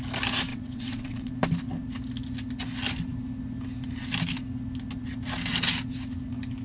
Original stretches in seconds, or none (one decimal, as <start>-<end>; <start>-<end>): 0.0-0.5; 1.3-6.6